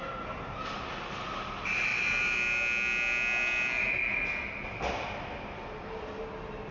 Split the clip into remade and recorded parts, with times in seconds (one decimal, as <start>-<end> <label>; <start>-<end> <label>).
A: 0.0-6.7 recorded